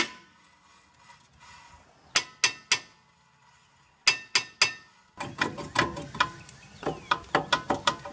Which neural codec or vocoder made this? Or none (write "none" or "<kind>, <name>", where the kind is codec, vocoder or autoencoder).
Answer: none